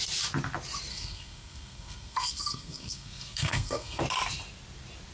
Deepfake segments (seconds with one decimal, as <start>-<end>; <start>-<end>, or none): 0.9-4.0